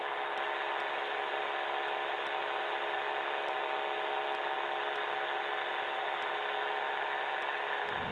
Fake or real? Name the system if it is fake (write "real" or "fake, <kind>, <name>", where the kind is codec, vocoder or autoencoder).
real